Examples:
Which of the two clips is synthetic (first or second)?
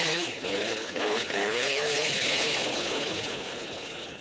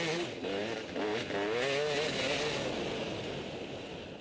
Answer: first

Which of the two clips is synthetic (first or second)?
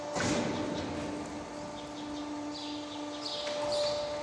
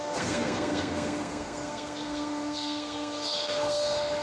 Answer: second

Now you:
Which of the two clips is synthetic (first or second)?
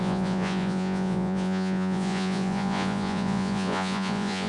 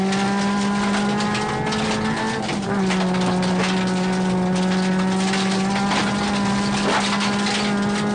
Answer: first